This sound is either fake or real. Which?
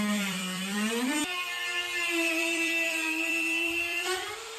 fake